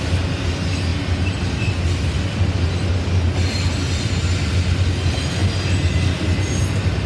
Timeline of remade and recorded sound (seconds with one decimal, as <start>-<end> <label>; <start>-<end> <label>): 0.0-7.1 recorded